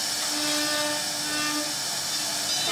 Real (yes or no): yes